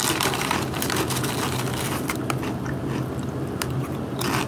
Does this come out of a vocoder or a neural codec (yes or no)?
no